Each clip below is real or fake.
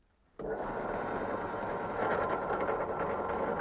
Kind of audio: real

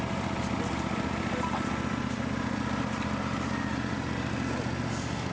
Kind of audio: real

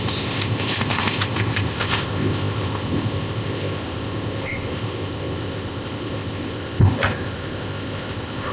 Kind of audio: fake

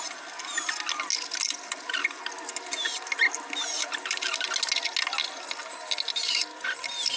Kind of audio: real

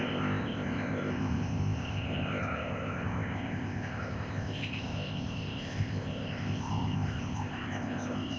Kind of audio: fake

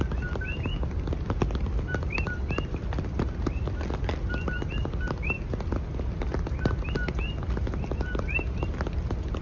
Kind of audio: real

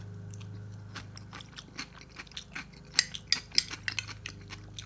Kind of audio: real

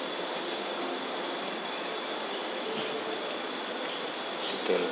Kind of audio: real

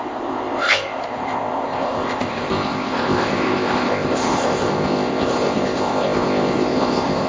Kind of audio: fake